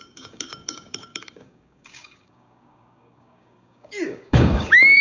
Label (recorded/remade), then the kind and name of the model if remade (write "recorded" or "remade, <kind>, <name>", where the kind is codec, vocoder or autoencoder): remade, codec, DAC